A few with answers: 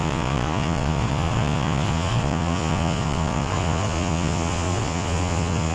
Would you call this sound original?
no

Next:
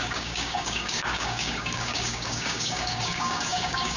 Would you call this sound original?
no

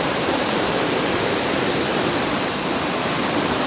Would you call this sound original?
no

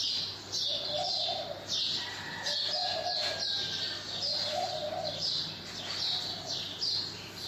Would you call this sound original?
yes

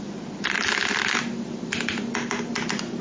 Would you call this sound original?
yes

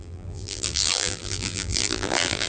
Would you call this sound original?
no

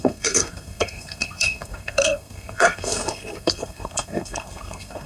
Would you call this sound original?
no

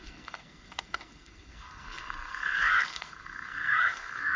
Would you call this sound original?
no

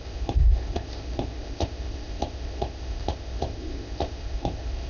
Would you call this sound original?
no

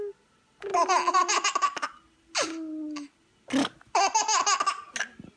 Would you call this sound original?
yes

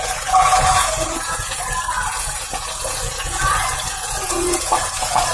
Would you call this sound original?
no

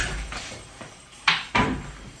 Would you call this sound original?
no